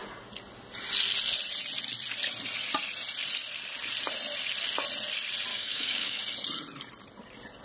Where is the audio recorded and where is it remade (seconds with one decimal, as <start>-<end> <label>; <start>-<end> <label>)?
0.0-5.5 recorded; 5.5-6.2 remade; 6.2-7.6 recorded